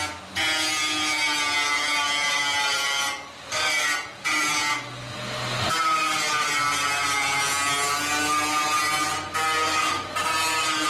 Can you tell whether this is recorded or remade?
recorded